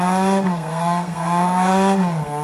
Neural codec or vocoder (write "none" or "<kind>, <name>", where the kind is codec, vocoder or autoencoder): codec, SNAC